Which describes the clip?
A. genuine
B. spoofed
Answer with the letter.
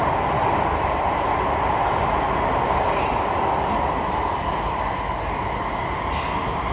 A